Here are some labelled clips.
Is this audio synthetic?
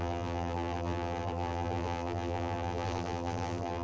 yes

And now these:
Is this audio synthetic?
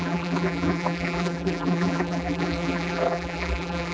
yes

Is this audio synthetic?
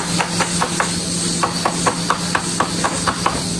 no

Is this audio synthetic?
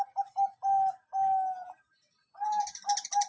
no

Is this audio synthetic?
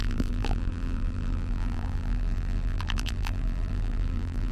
yes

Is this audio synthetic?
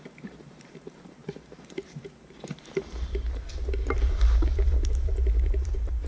yes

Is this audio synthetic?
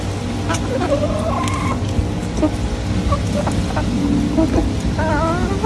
no